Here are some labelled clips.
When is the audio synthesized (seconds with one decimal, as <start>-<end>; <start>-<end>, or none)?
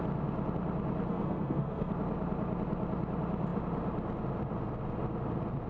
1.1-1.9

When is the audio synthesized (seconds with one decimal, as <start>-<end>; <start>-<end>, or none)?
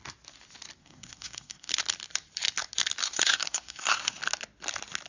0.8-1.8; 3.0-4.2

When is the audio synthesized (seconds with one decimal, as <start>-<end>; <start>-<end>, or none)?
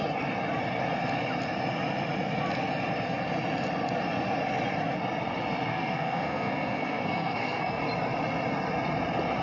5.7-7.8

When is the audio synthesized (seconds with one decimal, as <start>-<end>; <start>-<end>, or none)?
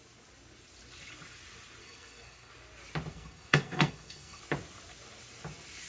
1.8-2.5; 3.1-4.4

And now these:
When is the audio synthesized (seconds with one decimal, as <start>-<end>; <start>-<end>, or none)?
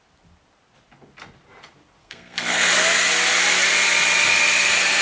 2.0-2.7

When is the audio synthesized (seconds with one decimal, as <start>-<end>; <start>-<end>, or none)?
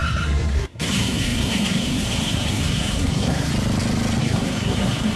0.0-3.5; 4.2-5.2